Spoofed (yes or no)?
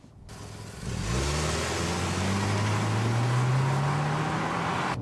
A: no